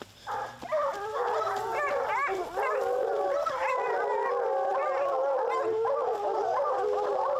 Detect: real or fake real